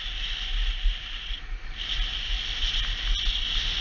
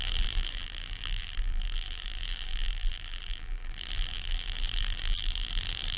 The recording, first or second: first